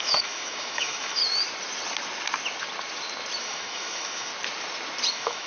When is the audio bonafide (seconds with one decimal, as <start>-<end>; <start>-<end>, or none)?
1.2-3.4; 4.3-5.1

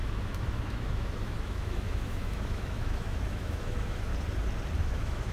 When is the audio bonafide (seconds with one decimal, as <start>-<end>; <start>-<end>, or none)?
4.1-4.8

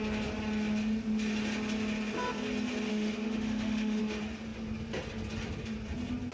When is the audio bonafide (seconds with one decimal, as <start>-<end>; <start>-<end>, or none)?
0.0-2.9; 4.0-6.3

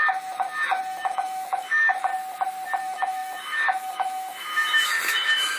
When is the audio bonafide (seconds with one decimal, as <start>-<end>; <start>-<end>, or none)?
2.1-2.8

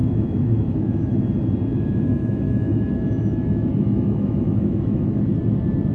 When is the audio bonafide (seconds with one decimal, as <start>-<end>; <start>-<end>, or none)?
1.2-1.7; 5.2-5.9

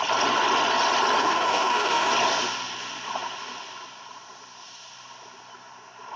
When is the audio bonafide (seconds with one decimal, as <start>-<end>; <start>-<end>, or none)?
0.0-1.2; 2.1-6.2